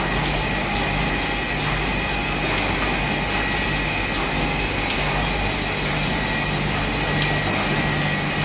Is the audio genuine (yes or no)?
yes